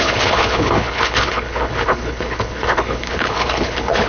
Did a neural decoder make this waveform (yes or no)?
yes